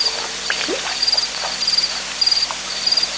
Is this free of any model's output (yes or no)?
yes